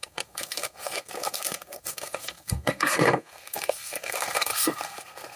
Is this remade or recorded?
remade